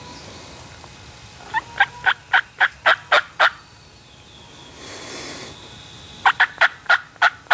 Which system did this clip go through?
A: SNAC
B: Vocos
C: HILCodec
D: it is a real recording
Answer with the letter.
D